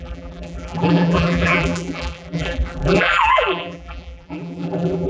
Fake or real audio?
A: fake